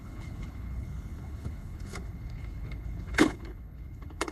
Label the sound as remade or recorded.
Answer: remade